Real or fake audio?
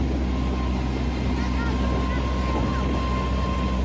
real